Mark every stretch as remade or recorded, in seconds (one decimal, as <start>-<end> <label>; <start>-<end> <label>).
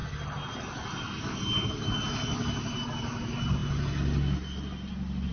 0.0-5.3 recorded